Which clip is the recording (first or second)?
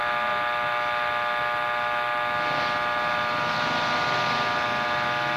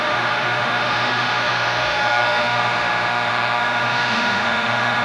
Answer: first